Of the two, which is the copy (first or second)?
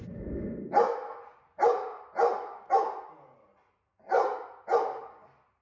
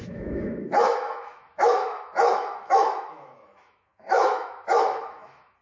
second